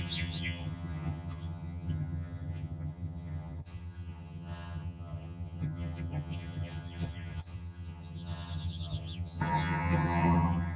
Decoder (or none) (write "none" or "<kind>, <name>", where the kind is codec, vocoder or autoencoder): vocoder, HiFi-GAN